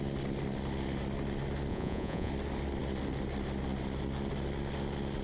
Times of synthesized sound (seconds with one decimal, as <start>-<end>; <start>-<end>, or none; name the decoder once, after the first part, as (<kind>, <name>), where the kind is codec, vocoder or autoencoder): 1.7-2.3 (vocoder, Vocos)